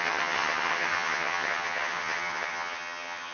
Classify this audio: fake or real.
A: fake